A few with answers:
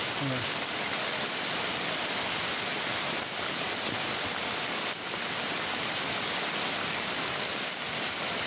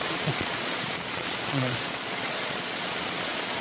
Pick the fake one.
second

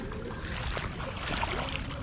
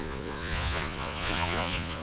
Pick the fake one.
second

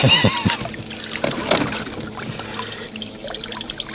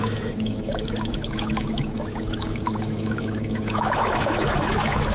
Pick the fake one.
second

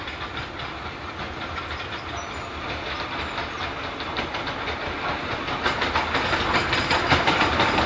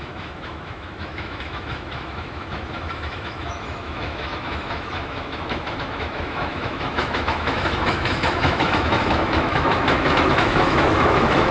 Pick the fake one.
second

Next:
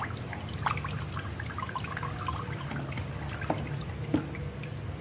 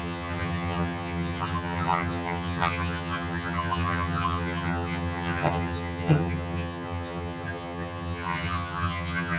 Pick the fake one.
second